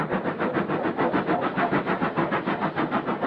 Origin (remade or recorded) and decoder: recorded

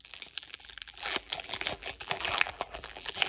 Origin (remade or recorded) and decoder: remade, vocoder, BigVGAN v2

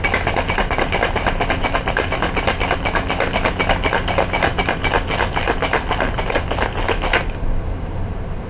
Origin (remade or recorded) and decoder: recorded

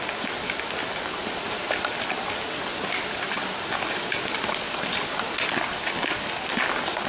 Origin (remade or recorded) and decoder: recorded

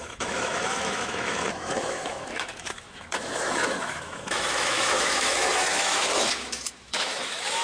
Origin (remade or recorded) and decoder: remade, autoencoder, DAC-VAE